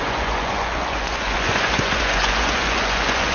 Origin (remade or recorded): remade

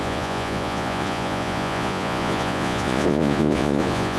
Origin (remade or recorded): remade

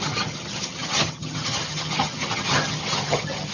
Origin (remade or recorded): remade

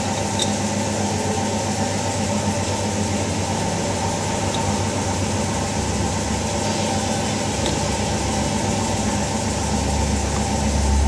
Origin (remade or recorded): recorded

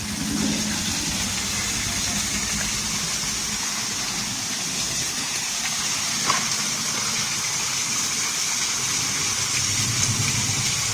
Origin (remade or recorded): recorded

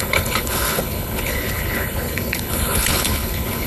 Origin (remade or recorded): remade